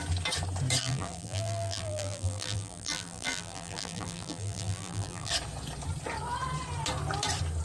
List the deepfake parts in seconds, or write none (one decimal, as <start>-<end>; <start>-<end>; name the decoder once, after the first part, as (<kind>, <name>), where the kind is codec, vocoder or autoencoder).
0.8-5.3 (vocoder, BigVGAN v2)